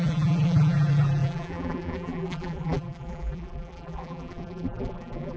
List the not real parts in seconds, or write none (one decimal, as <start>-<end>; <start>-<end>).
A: 0.0-5.4